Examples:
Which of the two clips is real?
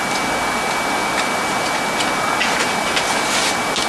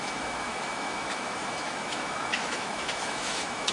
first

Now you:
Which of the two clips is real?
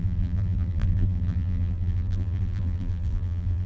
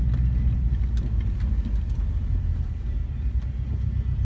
second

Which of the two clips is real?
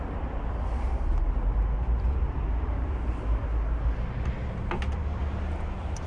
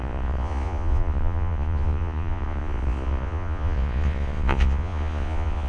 first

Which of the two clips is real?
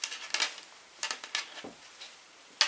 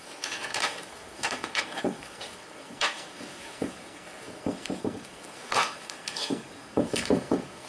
first